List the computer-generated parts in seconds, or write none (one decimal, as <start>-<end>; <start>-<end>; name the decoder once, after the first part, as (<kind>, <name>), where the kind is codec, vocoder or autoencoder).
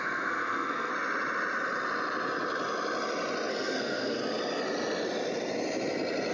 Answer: 0.0-0.9 (codec, SNAC); 3.5-4.2